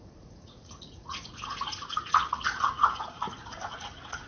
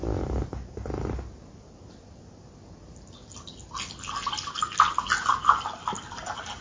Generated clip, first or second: first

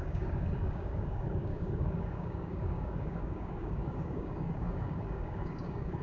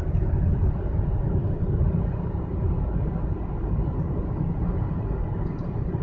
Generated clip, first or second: first